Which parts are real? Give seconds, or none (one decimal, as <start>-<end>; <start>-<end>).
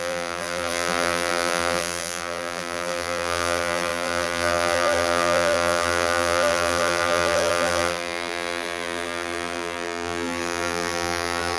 none